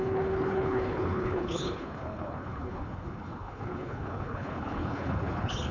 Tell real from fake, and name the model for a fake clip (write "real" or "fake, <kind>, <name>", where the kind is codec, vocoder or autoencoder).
fake, codec, HILCodec